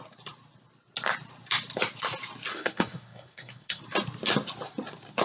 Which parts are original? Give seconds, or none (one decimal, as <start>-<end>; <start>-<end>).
0.0-2.5; 3.8-5.2